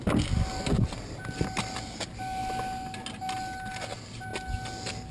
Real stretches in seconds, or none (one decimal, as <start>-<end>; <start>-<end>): 0.0-5.1